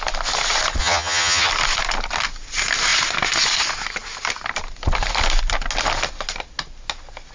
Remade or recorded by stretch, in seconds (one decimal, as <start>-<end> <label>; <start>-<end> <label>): 0.0-0.8 recorded; 0.8-1.5 remade; 1.5-7.3 recorded